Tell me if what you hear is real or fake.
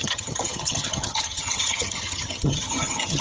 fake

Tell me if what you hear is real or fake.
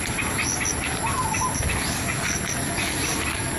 real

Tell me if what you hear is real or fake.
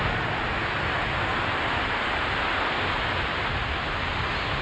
real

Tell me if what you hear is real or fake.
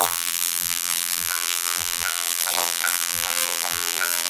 fake